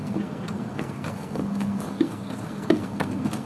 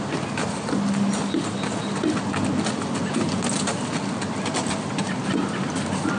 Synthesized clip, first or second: first